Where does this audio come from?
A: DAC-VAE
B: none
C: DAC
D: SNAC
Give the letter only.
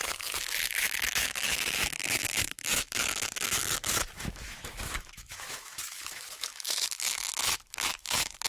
A